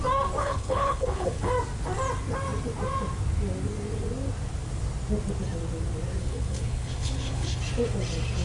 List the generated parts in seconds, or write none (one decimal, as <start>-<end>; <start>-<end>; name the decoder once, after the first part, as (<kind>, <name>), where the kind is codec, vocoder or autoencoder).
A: 0.4-1.5 (codec, HILCodec); 6.2-7.6